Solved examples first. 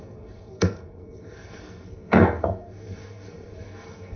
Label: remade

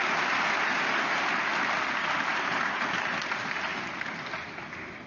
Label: recorded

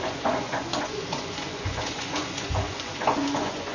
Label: remade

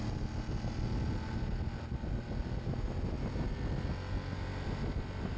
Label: recorded